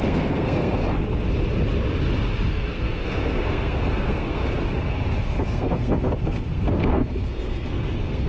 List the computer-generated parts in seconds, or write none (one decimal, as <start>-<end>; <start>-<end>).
0.0-0.8; 2.5-4.4; 5.2-8.3